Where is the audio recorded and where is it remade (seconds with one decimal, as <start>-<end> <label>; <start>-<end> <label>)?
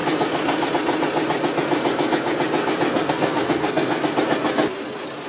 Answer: 0.0-2.9 recorded; 2.9-4.0 remade; 4.0-5.3 recorded